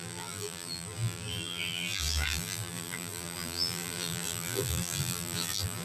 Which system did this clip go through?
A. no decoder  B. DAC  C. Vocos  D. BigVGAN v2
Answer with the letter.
D